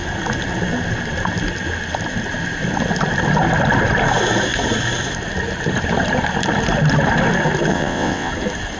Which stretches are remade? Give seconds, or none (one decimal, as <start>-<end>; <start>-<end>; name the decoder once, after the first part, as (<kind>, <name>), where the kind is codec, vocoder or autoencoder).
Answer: 7.7-8.3 (vocoder, WaveNeXt)